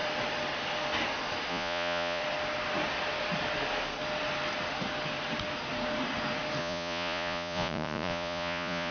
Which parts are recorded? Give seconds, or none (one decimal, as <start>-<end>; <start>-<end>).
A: 0.0-1.5; 2.2-6.6